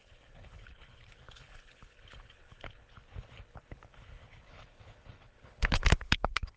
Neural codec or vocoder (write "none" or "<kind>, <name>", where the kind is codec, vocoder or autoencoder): codec, HILCodec